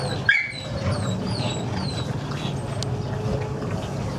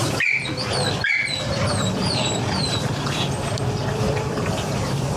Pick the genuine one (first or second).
first